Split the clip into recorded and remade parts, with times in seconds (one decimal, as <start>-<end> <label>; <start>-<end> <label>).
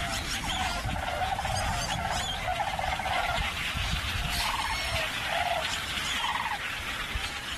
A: 0.0-0.7 remade; 0.7-1.5 recorded; 1.5-6.3 remade; 6.3-6.8 recorded; 6.8-7.6 remade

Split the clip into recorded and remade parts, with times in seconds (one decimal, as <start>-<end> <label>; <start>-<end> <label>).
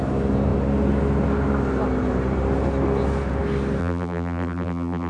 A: 0.0-3.8 recorded; 3.8-5.1 remade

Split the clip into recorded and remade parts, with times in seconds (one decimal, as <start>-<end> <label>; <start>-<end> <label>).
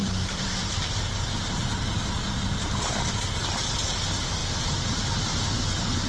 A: 0.0-1.2 remade; 1.2-4.4 recorded; 4.4-5.6 remade; 5.6-6.1 recorded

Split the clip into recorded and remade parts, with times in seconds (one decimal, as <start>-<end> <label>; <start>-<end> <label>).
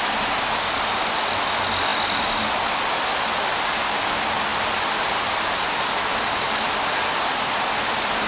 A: 0.0-8.3 recorded